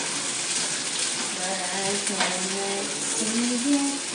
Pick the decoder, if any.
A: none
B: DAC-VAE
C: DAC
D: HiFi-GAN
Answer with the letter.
A